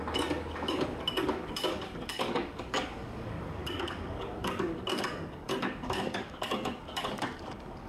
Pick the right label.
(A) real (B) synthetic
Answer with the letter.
B